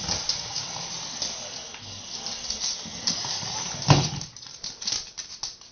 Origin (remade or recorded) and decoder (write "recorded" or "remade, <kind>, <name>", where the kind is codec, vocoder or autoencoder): recorded